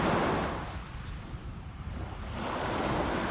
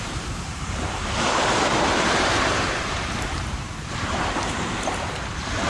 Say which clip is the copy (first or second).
second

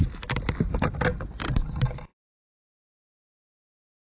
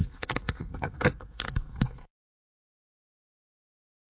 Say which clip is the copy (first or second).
second